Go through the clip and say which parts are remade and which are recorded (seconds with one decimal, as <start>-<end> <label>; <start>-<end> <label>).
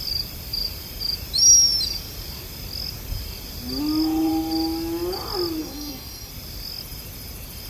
0.0-5.6 recorded; 5.6-6.3 remade; 6.3-7.7 recorded